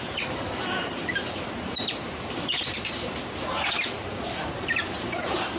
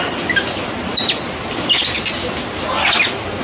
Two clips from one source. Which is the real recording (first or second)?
second